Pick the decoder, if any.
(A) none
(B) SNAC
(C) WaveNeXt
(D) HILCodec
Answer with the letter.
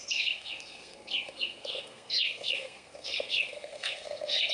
B